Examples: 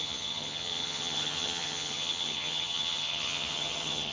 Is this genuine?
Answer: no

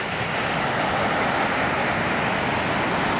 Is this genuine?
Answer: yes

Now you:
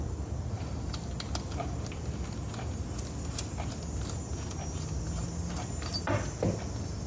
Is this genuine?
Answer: yes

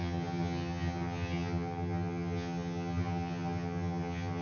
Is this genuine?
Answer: no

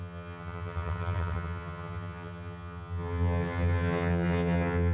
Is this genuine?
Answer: no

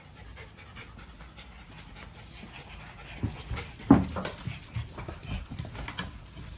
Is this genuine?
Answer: yes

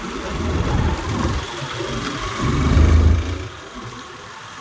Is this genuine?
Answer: yes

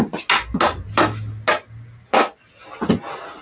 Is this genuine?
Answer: yes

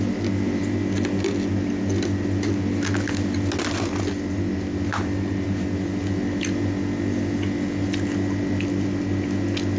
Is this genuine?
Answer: yes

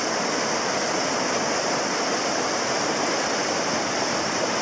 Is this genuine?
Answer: yes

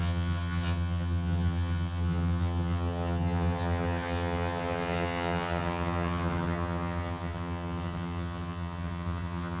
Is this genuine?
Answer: no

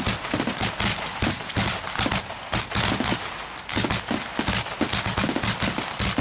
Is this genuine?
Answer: yes